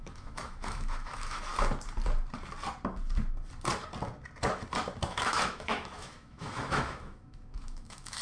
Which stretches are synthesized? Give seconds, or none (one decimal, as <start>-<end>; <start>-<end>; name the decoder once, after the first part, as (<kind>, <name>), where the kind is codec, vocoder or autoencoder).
0.0-1.5 (autoencoder, DAC-VAE); 5.1-8.2